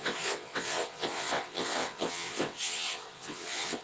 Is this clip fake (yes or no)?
yes